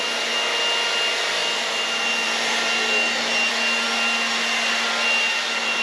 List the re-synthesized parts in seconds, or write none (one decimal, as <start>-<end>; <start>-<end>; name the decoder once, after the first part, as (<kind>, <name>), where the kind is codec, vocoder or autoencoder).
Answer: none